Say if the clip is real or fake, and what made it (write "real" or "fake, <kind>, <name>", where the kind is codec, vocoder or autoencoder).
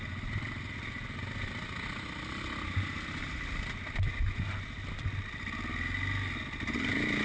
real